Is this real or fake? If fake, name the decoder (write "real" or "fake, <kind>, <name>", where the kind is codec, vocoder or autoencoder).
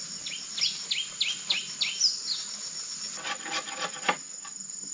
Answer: real